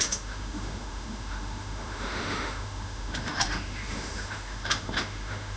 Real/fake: fake